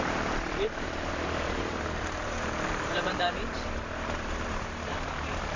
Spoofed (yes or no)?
yes